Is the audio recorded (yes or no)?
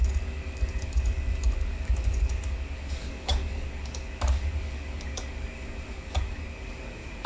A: no